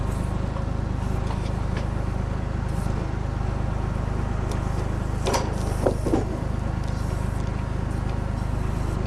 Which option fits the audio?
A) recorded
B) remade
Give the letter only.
A